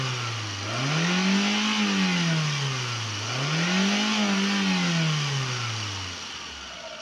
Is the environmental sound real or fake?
real